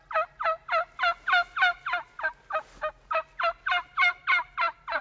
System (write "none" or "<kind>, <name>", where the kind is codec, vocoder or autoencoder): none